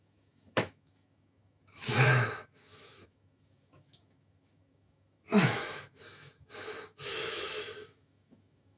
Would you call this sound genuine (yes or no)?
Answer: no